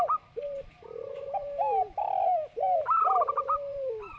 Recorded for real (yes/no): no